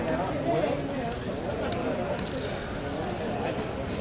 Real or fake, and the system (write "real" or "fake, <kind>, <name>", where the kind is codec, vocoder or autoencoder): real